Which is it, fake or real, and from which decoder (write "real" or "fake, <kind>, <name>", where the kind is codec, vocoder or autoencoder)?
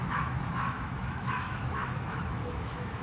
fake, autoencoder, DAC-VAE